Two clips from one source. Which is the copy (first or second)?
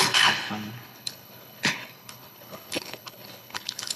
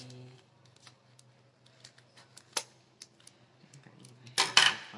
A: first